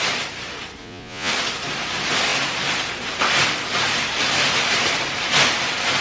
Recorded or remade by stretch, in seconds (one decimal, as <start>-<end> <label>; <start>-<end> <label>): 0.0-0.8 recorded; 0.8-1.3 remade; 1.3-6.0 recorded

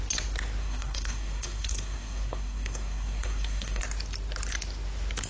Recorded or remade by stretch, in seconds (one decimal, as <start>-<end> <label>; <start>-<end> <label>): 0.0-0.6 recorded; 0.6-3.8 remade; 3.8-5.3 recorded

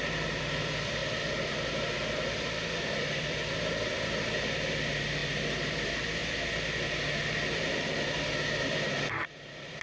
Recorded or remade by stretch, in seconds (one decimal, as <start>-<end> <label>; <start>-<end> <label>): 0.0-1.0 remade; 1.0-1.7 recorded; 1.7-6.2 remade; 6.2-8.6 recorded; 8.6-9.8 remade

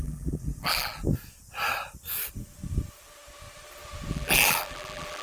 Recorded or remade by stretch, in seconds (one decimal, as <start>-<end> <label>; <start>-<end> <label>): 0.0-1.0 remade; 1.0-4.1 recorded; 4.1-5.2 remade

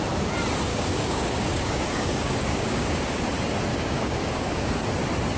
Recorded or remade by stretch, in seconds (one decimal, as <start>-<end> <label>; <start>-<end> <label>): 0.0-0.7 recorded; 0.7-3.2 remade; 3.2-3.7 recorded; 3.7-4.8 remade; 4.8-5.4 recorded

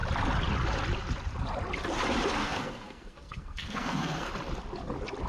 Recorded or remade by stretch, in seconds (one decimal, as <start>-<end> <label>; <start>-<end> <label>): 0.0-2.4 recorded; 2.4-4.3 remade; 4.3-5.3 recorded

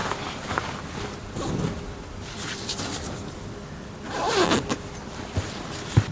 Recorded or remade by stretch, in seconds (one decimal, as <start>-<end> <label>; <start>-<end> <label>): 0.0-6.1 recorded